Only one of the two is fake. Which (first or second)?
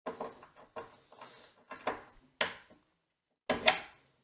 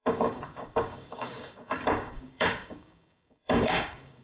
second